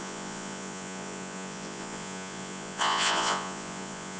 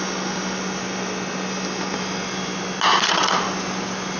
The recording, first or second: second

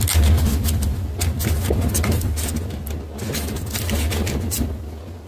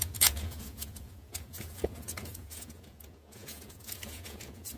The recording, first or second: first